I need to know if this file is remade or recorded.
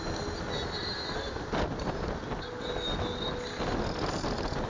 recorded